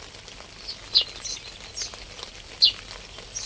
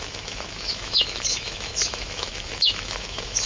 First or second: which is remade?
second